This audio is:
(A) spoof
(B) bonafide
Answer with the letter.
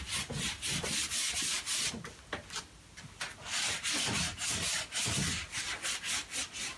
B